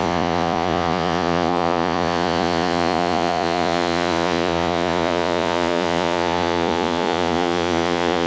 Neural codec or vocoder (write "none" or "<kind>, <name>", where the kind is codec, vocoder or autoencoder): vocoder, Vocos